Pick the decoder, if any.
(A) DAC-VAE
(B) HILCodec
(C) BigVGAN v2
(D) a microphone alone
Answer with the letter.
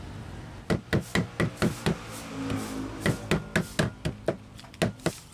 D